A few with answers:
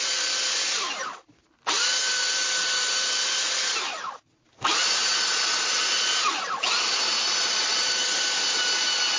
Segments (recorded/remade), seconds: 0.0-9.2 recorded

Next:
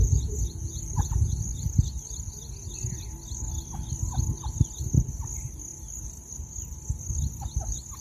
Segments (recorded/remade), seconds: 0.0-1.3 remade; 1.3-8.0 recorded

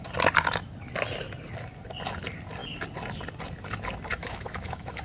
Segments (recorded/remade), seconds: 0.0-4.1 recorded; 4.1-5.0 remade

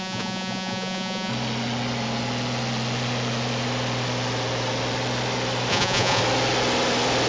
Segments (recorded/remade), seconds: 0.0-1.3 remade; 1.3-5.7 recorded; 5.7-6.2 remade; 6.2-7.3 recorded

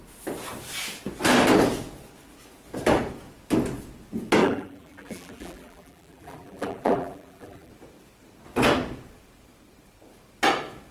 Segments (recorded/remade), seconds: 0.0-4.4 recorded; 4.4-7.7 remade; 7.7-10.9 recorded

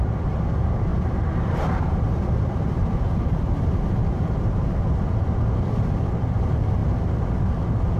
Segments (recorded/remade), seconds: 0.0-0.9 recorded; 0.9-4.6 remade; 4.6-8.0 recorded